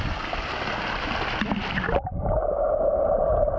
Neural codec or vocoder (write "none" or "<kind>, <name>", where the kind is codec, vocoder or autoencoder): none